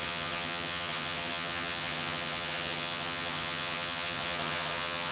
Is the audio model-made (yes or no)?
yes